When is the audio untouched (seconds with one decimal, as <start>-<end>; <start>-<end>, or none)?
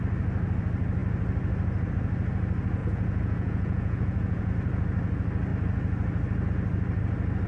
0.0-2.8; 4.5-7.5